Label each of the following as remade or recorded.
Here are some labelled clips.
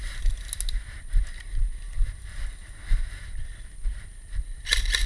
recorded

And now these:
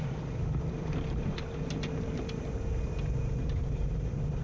remade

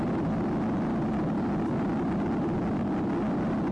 recorded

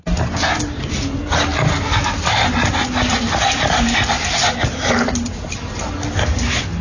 recorded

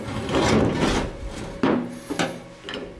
recorded